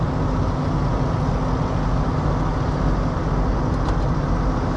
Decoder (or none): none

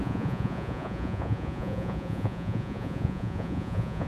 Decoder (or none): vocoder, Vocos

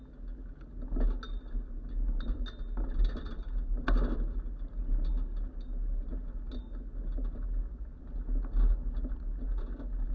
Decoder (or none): none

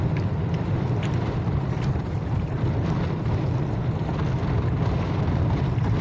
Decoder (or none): none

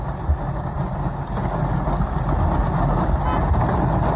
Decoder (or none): none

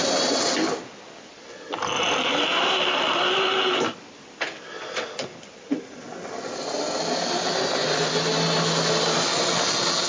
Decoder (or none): none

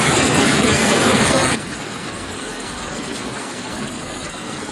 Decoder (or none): codec, SNAC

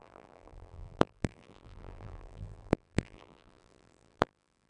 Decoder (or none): vocoder, BigVGAN v2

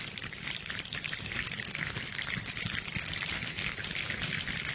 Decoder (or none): none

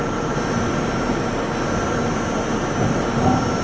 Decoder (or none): none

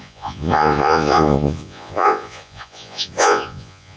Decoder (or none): vocoder, Vocos